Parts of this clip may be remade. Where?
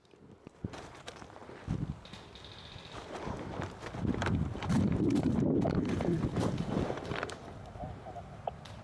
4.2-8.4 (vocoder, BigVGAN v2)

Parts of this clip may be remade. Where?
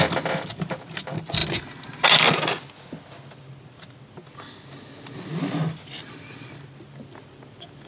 none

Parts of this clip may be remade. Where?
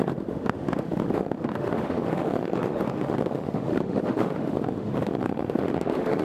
0.0-6.2 (autoencoder, DAC-VAE)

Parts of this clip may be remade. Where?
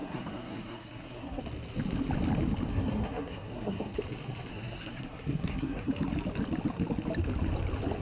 0.0-1.4 (codec, SNAC); 2.7-4.0; 4.5-5.9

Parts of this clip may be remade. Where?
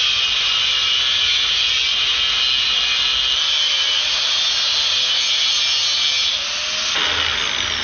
none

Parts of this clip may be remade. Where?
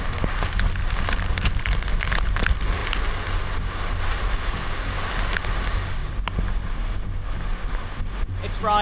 none